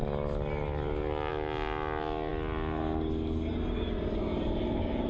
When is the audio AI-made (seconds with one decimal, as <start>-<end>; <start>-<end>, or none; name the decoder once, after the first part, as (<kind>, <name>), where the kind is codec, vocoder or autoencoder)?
none